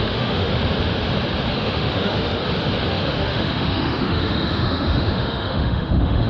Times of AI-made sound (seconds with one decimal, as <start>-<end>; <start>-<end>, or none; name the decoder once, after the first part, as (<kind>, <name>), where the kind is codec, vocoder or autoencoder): 0.0-0.5 (autoencoder, DAC-VAE); 1.5-2.4; 2.9-6.3